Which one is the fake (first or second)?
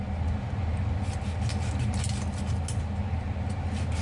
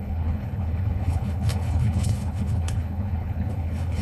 second